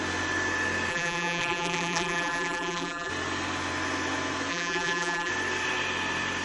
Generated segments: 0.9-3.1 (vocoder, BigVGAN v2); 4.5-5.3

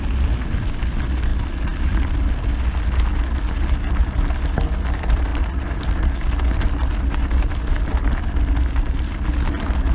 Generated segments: none